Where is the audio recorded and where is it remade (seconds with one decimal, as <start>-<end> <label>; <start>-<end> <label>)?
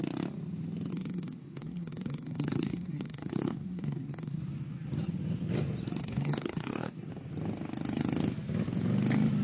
0.0-0.9 recorded; 0.9-4.4 remade; 4.4-6.0 recorded; 6.0-7.1 remade; 7.1-9.4 recorded